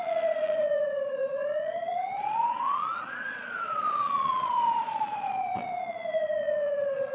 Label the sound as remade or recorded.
remade